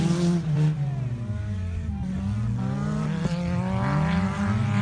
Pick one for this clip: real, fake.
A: real